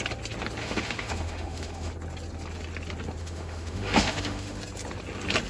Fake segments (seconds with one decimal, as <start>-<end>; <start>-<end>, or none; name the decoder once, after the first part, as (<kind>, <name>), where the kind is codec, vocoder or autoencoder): 0.6-1.9 (autoencoder, DAC-VAE); 3.2-4.6